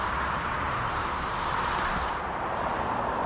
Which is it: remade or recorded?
remade